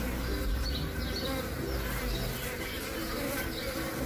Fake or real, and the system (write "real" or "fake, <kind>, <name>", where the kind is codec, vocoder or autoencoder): real